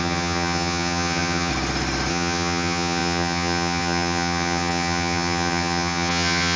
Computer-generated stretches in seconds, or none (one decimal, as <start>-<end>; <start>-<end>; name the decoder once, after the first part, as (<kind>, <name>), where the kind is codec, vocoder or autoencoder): 0.0-1.5 (vocoder, HiFi-GAN); 2.1-6.6